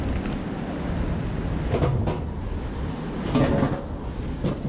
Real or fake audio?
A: real